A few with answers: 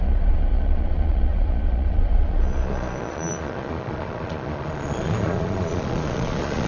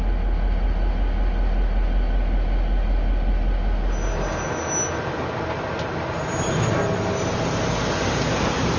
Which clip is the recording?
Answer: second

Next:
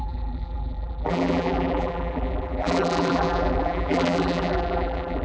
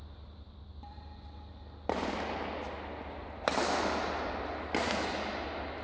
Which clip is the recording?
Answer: second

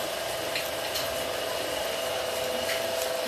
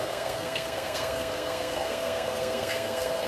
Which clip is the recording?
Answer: first